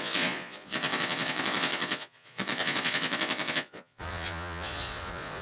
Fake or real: fake